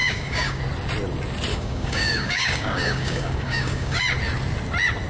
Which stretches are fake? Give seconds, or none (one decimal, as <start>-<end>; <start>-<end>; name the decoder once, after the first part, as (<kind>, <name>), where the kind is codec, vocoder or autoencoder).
0.0-0.6 (codec, DAC); 1.5-4.0